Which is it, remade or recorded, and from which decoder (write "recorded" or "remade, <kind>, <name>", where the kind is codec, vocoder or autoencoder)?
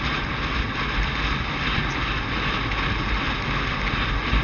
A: recorded